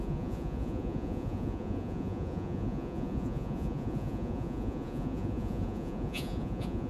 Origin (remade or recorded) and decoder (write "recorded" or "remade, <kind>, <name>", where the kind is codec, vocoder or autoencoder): remade, vocoder, Vocos